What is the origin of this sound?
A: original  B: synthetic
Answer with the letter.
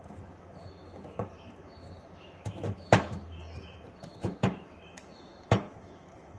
B